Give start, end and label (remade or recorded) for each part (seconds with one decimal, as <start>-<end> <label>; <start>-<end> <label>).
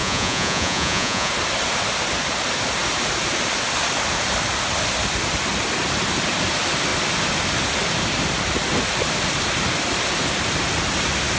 0.0-1.3 remade; 1.3-11.4 recorded